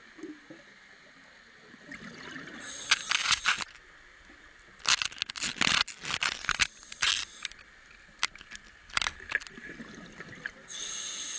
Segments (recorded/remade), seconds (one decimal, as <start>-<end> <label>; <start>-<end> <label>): 0.0-11.4 recorded